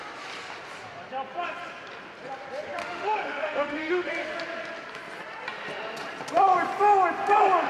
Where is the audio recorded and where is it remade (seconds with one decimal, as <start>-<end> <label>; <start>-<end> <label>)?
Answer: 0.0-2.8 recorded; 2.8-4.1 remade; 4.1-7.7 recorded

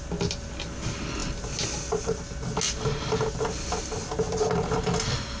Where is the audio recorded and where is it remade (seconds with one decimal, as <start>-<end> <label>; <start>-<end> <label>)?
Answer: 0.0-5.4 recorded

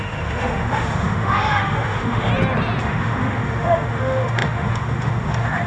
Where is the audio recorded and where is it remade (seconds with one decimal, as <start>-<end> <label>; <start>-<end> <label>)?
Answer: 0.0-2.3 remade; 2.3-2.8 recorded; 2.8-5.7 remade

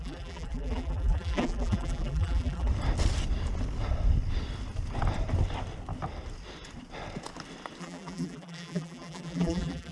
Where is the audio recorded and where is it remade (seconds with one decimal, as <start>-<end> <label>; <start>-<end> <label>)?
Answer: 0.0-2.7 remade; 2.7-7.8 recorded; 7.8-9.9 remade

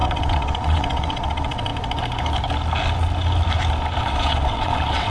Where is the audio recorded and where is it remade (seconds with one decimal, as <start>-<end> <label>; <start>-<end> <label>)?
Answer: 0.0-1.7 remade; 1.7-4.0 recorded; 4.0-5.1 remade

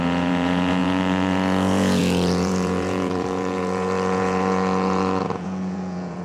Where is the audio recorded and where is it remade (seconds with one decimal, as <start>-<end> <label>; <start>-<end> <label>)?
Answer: 0.0-6.2 remade

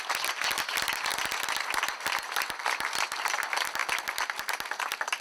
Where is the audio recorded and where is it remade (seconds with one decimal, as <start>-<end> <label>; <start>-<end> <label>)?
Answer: 0.0-5.2 recorded